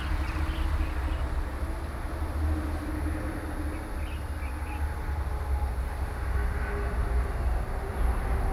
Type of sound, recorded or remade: recorded